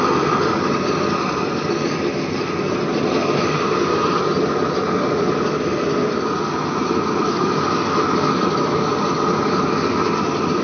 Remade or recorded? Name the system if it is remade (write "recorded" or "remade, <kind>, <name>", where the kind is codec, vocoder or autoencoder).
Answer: recorded